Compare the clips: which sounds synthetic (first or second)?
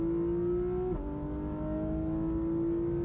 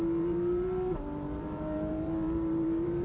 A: second